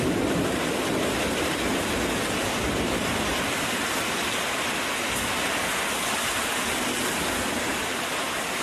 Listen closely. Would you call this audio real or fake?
real